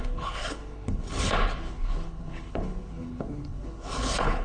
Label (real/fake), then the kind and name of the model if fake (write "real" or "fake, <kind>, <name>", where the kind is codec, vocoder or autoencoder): fake, codec, HILCodec